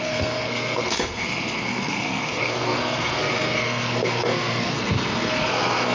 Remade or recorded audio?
remade